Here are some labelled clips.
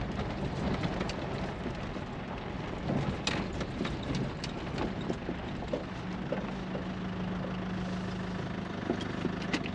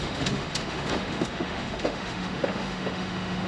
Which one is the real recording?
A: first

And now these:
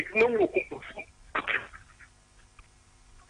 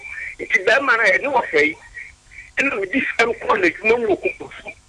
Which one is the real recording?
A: first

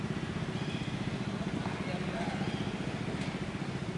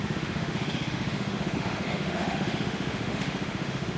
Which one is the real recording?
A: first